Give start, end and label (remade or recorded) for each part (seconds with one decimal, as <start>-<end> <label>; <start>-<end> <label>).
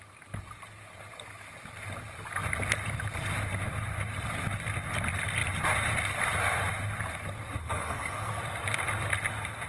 0.0-7.6 recorded; 7.6-8.4 remade; 8.4-9.7 recorded